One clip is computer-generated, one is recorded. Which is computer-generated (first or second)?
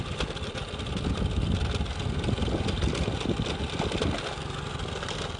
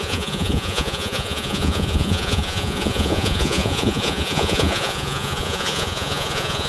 second